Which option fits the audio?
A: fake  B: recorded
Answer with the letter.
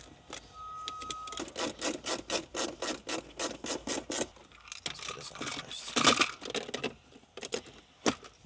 B